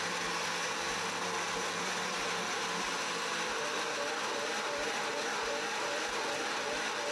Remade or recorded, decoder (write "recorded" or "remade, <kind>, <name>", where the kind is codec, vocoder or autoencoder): recorded